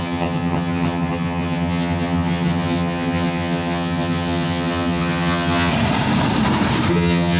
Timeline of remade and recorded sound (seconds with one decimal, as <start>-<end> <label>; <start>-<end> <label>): 0.0-5.7 remade; 5.7-6.9 recorded; 6.9-7.4 remade